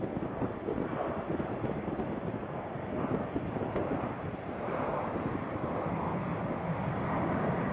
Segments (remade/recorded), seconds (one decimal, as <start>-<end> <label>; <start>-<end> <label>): 0.0-7.7 recorded